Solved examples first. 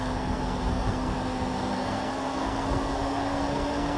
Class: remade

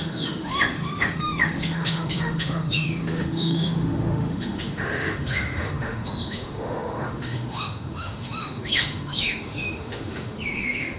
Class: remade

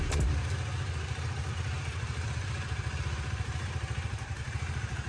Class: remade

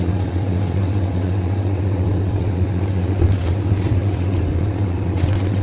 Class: remade